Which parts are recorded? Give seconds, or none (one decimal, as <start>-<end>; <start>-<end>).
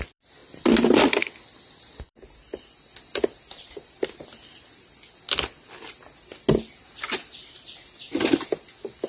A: 0.0-9.1